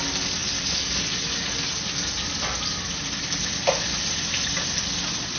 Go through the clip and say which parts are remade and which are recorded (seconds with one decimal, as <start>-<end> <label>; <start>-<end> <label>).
0.0-5.4 recorded